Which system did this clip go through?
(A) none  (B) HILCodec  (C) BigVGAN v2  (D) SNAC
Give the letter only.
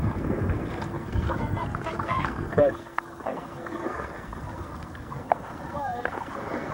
D